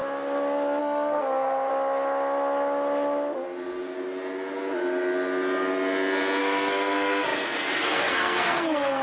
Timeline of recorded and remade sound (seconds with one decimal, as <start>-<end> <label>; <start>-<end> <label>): 0.0-0.8 recorded; 0.8-1.7 remade; 1.7-6.4 recorded; 6.4-9.0 remade